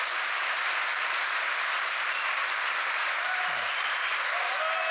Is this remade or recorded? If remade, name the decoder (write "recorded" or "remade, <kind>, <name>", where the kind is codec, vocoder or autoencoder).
recorded